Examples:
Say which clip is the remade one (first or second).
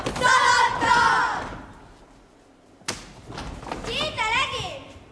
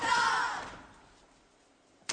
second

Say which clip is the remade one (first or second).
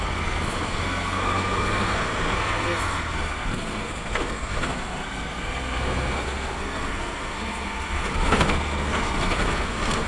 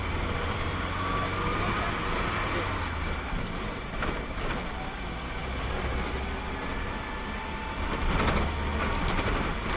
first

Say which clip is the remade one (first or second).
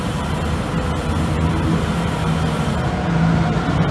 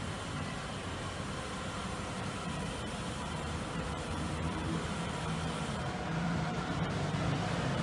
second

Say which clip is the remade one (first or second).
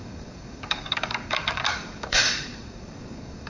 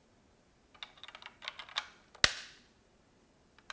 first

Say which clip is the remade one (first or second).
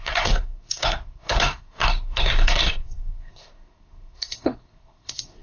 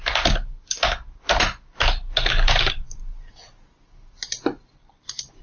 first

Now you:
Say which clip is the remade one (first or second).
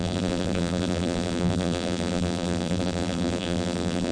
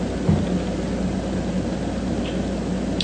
first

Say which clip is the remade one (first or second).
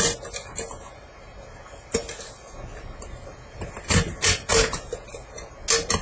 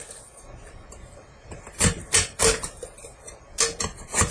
second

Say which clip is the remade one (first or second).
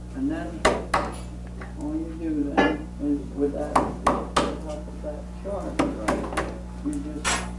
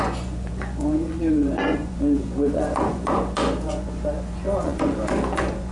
second